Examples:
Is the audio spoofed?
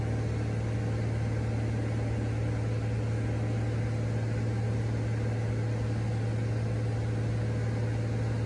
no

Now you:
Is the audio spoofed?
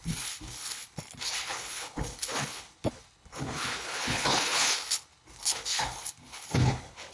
yes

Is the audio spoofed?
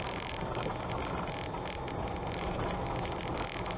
no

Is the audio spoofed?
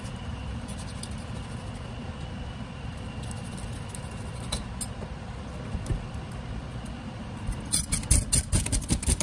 no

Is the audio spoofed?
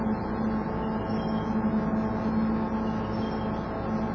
no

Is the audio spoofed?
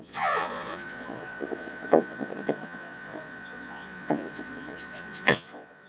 yes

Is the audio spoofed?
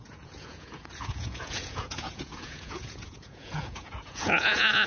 yes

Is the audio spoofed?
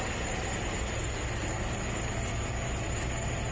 no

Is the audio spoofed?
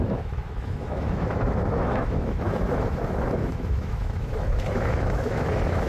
yes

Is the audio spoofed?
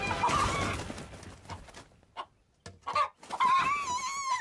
no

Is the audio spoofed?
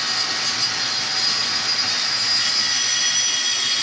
no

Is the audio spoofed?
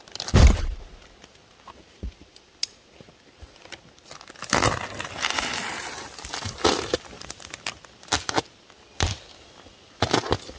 no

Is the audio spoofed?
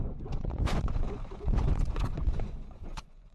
yes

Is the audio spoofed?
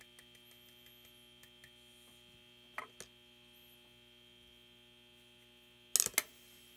no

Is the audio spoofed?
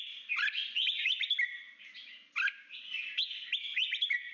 no